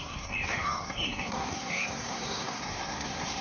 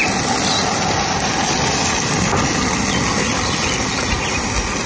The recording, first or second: second